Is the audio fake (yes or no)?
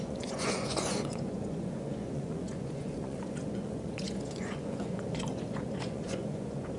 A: yes